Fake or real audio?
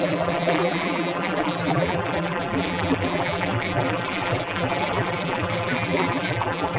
fake